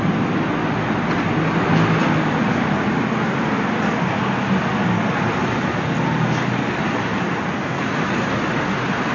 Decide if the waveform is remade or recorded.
recorded